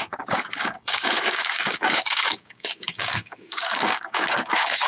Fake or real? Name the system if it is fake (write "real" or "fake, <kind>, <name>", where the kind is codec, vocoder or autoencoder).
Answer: fake, codec, DAC